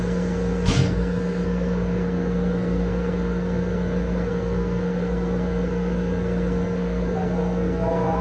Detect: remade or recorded remade